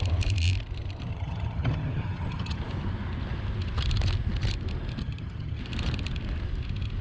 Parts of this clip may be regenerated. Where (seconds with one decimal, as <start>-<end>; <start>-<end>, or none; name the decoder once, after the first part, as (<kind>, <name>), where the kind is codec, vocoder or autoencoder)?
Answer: 1.1-2.6 (vocoder, HiFi-GAN); 5.0-5.6